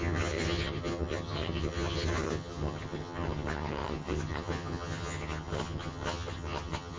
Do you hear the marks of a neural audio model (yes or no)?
yes